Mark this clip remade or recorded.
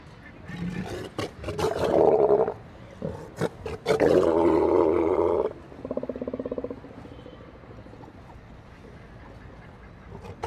recorded